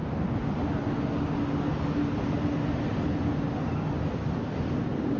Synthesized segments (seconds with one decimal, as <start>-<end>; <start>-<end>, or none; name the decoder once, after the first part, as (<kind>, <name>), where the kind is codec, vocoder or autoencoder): none